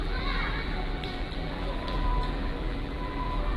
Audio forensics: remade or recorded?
remade